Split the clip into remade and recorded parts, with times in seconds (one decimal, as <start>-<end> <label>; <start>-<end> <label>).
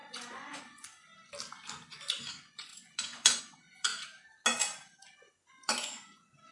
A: 0.0-1.1 remade; 1.1-2.3 recorded; 2.3-3.9 remade; 3.9-5.1 recorded; 5.1-6.5 remade